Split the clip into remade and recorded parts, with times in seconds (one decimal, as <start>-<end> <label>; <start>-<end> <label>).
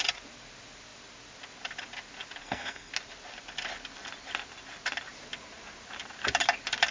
0.0-2.4 recorded; 2.4-2.9 remade; 2.9-6.9 recorded